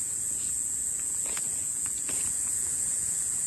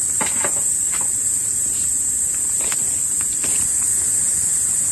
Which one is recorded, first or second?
second